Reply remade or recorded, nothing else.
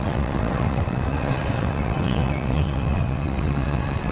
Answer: remade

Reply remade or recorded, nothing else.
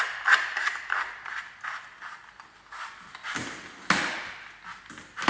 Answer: recorded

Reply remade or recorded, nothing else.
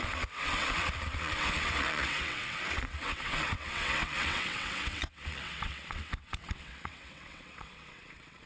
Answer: remade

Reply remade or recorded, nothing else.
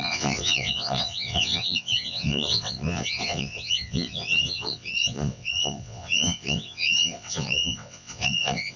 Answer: remade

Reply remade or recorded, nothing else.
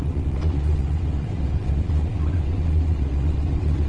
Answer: remade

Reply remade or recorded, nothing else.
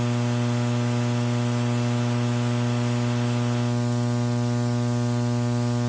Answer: recorded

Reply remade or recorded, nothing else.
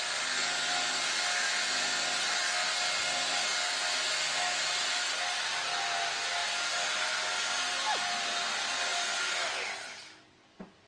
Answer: recorded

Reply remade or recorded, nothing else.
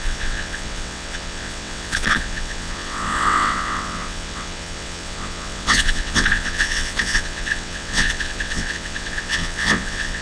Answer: remade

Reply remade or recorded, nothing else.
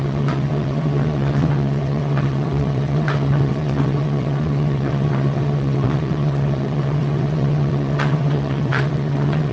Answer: remade